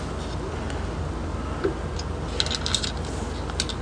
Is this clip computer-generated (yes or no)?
no